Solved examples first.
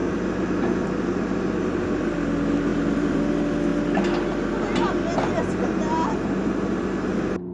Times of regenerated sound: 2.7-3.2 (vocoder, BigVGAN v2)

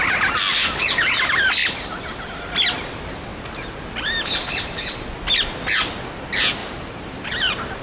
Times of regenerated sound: 3.3-5.0 (vocoder, BigVGAN v2); 6.6-7.8

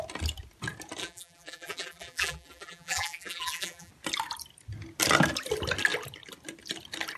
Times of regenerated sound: 1.0-3.9 (vocoder, BigVGAN v2)